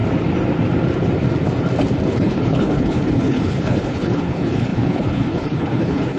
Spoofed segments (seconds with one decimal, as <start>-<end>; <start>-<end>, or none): 2.1-6.2